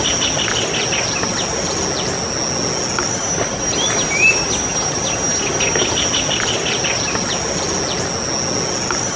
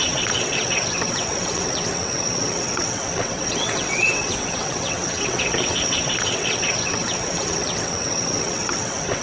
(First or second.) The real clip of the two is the first